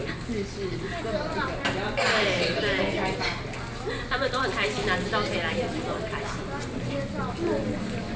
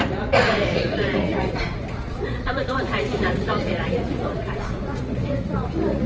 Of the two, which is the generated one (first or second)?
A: second